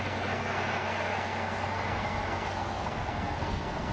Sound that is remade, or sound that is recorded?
remade